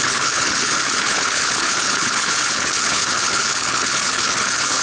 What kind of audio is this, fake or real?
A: fake